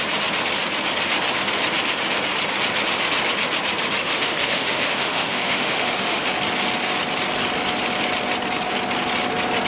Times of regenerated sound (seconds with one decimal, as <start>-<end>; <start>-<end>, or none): 4.0-6.3